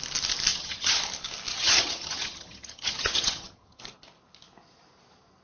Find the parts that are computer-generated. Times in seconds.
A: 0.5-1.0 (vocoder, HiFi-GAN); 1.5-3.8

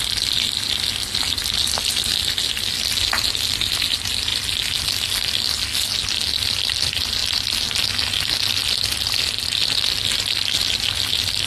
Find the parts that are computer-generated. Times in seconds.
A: none

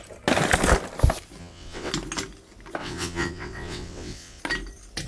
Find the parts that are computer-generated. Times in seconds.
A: 1.4-1.9 (vocoder, WaveNeXt); 2.8-4.4

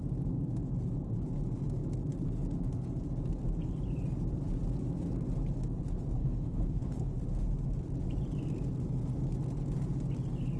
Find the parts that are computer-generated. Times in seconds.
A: 6.2-7.1 (codec, HILCodec)

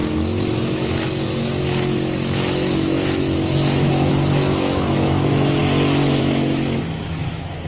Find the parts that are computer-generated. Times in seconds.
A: 0.0-5.6 (autoencoder, DAC-VAE); 6.2-7.7

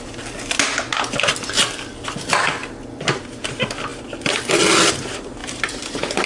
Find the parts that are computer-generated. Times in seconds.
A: 5.4-6.3 (vocoder, BigVGAN v2)

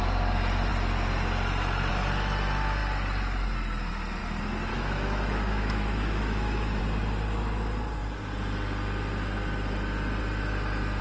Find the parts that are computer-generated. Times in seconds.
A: 4.7-6.8 (autoencoder, DAC-VAE)